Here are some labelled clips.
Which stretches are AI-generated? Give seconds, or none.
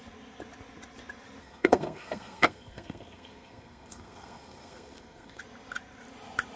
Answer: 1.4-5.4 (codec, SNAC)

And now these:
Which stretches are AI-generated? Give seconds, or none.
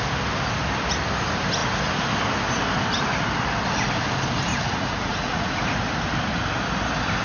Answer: 4.5-5.6 (vocoder, Vocos)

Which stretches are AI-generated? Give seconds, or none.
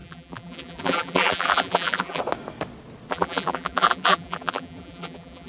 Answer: 0.0-2.2 (vocoder, BigVGAN v2); 3.1-5.5